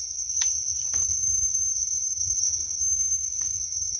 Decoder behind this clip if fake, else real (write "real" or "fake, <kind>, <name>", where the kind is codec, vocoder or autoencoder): fake, codec, SNAC